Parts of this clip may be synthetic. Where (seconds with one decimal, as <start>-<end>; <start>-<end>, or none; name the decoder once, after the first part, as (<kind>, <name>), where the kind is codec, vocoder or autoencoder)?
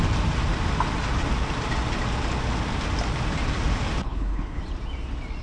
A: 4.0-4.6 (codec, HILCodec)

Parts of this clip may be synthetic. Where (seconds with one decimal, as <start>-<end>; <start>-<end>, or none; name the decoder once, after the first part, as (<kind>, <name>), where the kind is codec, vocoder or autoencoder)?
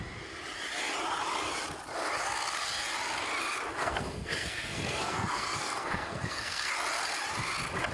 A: 3.8-6.7 (codec, SNAC)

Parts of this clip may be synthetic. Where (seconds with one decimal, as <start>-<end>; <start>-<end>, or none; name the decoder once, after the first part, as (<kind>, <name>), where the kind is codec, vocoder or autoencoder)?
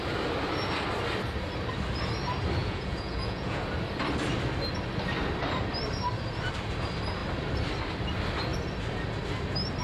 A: 2.6-3.6 (vocoder, Vocos)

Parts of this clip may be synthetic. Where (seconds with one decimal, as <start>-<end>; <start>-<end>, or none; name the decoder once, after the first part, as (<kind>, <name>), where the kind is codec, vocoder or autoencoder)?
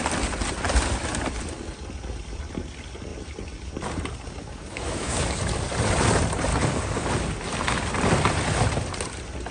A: 4.4-5.4 (codec, DAC); 6.5-7.1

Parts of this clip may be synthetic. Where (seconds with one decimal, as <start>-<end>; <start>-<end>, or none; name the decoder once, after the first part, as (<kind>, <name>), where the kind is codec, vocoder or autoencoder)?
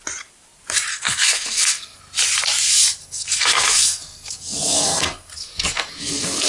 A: 0.9-2.0 (codec, SNAC); 3.0-6.5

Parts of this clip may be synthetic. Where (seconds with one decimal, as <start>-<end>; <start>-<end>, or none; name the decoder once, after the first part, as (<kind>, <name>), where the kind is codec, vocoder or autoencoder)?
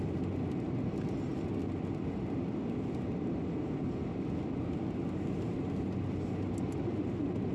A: none